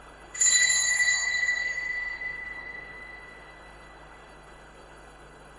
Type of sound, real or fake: fake